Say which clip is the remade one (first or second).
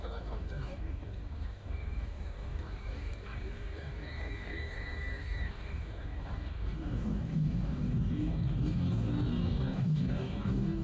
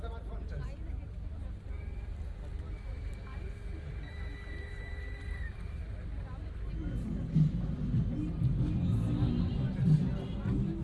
first